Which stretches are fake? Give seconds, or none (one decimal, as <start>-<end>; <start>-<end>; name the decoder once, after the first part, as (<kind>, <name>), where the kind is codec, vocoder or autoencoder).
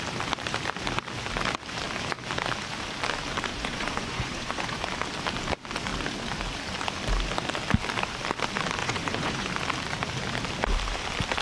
3.5-4.8 (vocoder, Vocos); 8.8-9.5